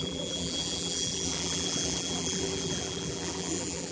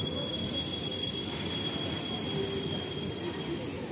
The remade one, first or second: first